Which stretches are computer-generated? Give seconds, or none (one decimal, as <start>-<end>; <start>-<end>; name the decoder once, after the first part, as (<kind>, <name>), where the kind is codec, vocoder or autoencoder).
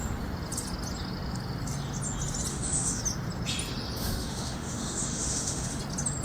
2.5-3.0 (autoencoder, DAC-VAE); 4.0-5.8